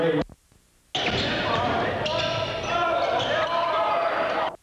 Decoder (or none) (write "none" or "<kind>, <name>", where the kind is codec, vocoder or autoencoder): none